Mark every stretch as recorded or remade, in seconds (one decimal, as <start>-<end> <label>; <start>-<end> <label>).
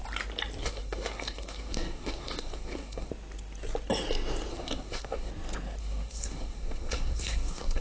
0.0-0.6 recorded; 0.6-3.1 remade; 3.1-4.5 recorded; 4.5-5.3 remade; 5.3-5.8 recorded; 5.8-7.8 remade